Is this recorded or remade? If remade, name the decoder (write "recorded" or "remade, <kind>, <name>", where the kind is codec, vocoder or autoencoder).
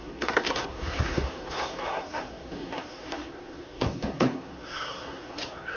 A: remade, codec, SNAC